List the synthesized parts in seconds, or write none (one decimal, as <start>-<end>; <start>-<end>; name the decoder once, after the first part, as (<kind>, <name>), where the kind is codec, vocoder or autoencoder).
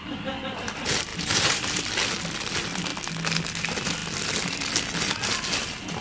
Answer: 1.1-1.9 (vocoder, BigVGAN v2)